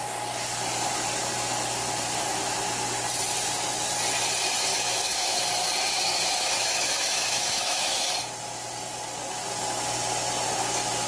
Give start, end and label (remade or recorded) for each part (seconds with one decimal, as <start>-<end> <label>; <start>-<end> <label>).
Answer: 0.0-4.7 recorded; 4.7-5.4 remade; 5.4-5.9 recorded; 5.9-8.1 remade; 8.1-11.1 recorded